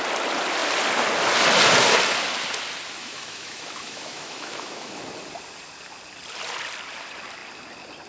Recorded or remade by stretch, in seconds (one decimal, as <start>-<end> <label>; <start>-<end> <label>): 0.0-3.0 recorded; 3.0-5.0 remade; 5.0-8.1 recorded